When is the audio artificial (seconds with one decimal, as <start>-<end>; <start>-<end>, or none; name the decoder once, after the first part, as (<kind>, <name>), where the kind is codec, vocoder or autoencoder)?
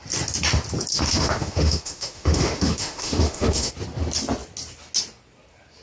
0.9-3.7 (autoencoder, DAC-VAE)